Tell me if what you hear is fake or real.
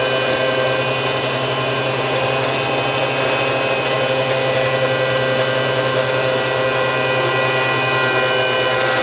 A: real